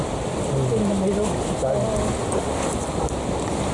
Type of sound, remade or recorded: recorded